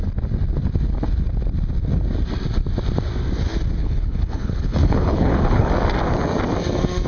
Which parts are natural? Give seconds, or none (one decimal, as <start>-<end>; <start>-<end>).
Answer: 0.0-3.8; 5.7-7.1